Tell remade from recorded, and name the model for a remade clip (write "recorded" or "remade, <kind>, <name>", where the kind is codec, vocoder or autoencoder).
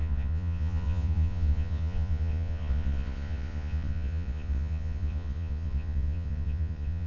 remade, vocoder, Vocos